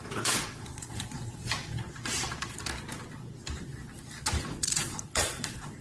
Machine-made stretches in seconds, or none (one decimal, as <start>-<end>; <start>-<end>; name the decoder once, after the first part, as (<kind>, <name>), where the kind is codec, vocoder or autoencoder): 0.0-1.4 (vocoder, Vocos); 4.4-5.8